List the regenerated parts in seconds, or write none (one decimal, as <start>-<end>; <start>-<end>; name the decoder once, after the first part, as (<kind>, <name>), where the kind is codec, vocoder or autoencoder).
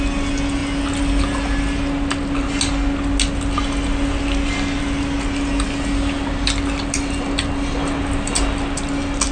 none